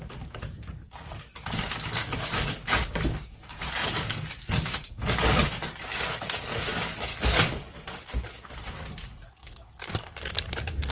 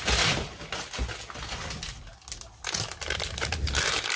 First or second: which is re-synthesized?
first